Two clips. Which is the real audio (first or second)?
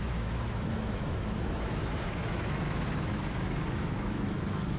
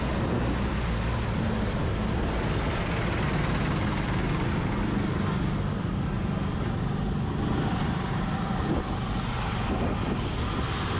second